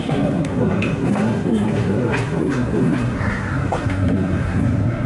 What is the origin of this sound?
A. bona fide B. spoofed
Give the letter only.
B